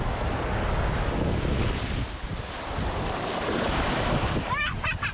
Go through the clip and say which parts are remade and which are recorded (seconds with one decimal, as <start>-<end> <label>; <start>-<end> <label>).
0.0-2.3 recorded; 2.3-5.1 remade